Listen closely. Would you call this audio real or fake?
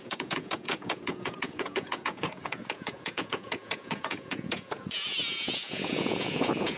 fake